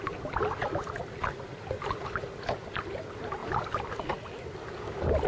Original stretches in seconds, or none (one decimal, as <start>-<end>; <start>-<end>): 0.0-5.3